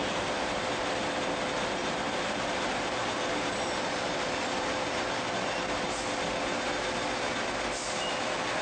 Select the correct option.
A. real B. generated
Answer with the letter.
A